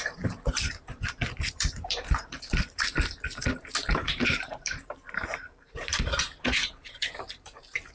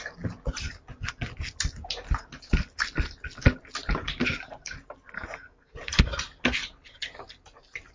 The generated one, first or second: first